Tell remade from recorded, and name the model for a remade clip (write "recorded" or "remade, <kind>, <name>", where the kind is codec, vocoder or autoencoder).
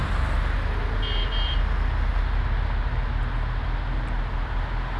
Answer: recorded